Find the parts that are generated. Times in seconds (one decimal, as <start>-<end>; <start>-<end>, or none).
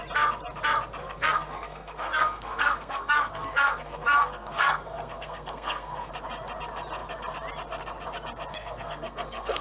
1.0-6.1; 8.5-9.6